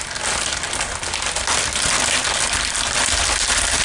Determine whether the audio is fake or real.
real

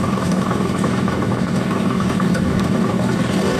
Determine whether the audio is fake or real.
fake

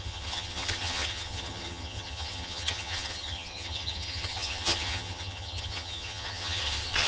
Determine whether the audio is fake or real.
fake